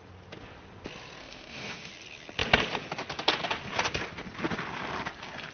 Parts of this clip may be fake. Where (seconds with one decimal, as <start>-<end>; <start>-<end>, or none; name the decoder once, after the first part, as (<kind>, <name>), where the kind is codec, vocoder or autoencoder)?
1.2-1.9 (autoencoder, DAC-VAE)